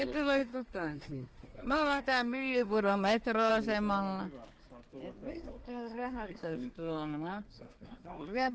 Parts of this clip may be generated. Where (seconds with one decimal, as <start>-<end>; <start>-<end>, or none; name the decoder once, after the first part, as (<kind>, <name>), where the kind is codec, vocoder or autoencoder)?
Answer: 0.0-3.5 (codec, SNAC); 5.3-8.5